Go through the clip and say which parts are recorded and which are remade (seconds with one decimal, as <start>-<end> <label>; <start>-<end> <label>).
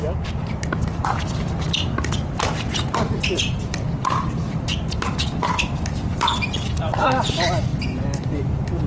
0.0-0.8 recorded; 0.8-5.6 remade; 5.6-7.7 recorded; 7.7-8.4 remade; 8.4-8.9 recorded